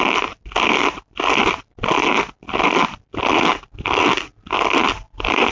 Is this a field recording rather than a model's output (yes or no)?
yes